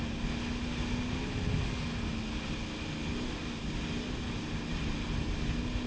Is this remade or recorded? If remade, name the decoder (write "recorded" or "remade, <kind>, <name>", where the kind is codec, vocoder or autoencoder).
recorded